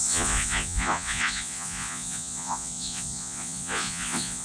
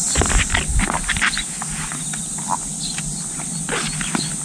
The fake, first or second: first